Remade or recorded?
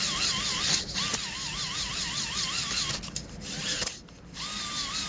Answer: recorded